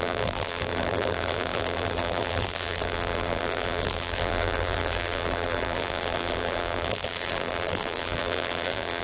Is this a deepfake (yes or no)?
yes